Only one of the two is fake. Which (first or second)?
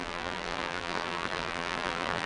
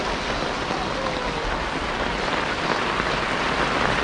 first